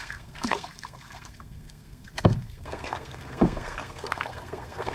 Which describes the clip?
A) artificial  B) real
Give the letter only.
A